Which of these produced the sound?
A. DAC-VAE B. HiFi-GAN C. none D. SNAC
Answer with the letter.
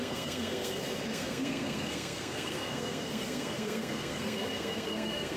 D